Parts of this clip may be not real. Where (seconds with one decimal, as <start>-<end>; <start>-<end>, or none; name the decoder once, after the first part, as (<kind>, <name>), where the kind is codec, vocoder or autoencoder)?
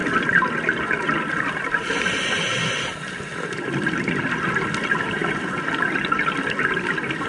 none